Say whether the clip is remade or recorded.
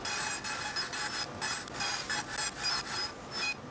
recorded